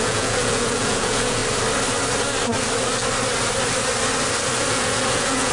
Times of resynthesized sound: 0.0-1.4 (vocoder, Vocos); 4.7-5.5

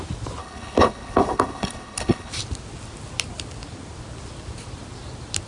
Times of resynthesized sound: 0.4-2.3 (codec, HILCodec)

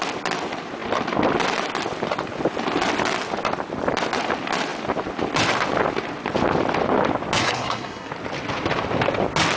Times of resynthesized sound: 7.4-8.1 (codec, SNAC)